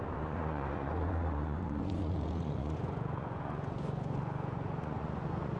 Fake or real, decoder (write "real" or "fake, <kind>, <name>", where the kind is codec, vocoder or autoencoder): fake, vocoder, Vocos